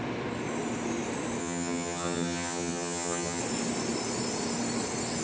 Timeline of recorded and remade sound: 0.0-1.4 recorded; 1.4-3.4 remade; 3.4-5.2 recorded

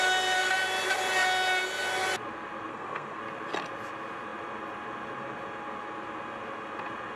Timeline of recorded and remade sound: 0.0-2.7 recorded; 2.7-3.2 remade; 3.2-7.2 recorded